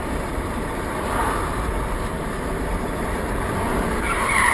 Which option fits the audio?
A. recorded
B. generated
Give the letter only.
B